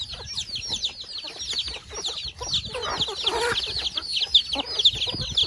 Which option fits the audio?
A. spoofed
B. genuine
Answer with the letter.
B